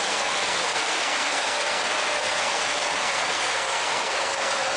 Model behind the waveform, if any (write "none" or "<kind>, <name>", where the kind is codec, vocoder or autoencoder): codec, SNAC